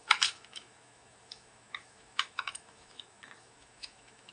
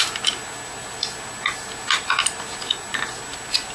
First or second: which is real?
second